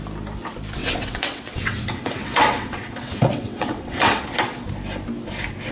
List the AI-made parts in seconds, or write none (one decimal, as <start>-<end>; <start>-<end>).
0.8-4.2